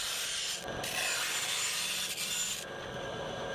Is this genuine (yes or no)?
yes